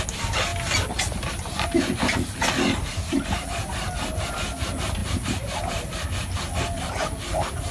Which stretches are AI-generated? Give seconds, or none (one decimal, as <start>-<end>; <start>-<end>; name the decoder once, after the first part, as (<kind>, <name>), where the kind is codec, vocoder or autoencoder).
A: none